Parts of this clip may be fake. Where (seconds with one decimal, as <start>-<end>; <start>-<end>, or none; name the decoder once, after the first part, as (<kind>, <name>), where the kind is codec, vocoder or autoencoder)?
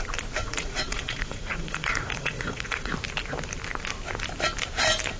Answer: 0.4-2.9 (vocoder, Vocos)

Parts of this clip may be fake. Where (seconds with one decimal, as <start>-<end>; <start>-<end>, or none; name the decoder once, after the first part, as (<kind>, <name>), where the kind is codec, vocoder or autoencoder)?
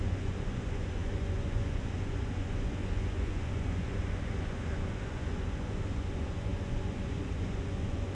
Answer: 0.0-8.1 (vocoder, Vocos)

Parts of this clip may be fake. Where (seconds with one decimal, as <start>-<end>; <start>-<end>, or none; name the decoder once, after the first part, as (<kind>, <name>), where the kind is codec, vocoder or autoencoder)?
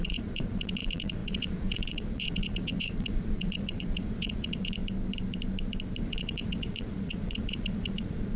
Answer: 0.0-4.8 (vocoder, Vocos); 6.0-8.4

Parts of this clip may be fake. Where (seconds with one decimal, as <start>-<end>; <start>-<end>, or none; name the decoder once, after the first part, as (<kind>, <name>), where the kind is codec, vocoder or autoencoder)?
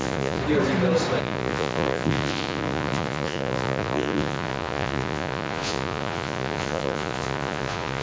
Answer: 0.0-0.4 (vocoder, Vocos); 1.2-8.0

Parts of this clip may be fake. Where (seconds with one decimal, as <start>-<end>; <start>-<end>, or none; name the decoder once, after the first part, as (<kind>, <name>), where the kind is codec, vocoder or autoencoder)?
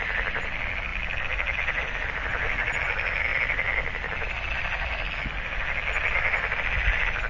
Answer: none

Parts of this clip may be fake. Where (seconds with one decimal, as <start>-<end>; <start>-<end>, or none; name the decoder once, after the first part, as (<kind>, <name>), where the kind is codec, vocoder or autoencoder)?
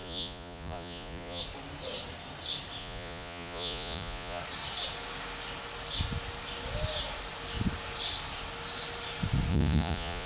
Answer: 0.0-1.4 (vocoder, Vocos); 2.8-4.4; 9.5-10.3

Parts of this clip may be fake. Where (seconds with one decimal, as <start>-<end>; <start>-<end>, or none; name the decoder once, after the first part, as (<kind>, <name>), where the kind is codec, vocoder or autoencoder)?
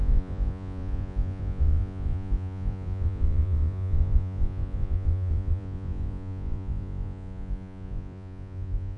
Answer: 0.0-9.0 (vocoder, Vocos)